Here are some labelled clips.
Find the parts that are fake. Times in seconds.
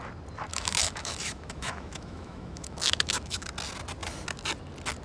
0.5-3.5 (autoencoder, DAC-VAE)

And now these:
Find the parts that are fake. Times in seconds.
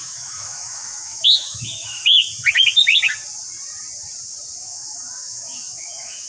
0.0-2.2 (autoencoder, DAC-VAE); 4.6-6.3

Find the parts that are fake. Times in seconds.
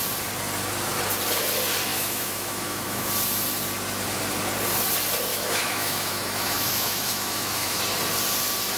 1.9-3.1 (autoencoder, DAC-VAE); 5.3-7.8